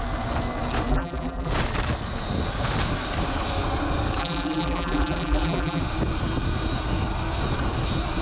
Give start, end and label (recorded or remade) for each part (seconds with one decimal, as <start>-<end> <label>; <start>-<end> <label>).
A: 0.0-0.9 recorded; 0.9-1.5 remade; 1.5-4.2 recorded; 4.2-5.8 remade; 5.8-8.2 recorded